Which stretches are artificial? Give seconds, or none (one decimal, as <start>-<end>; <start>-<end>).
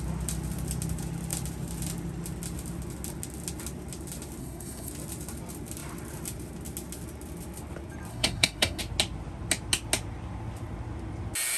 4.4-4.9; 8.1-8.8